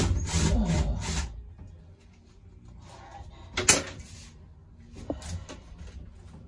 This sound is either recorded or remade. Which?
recorded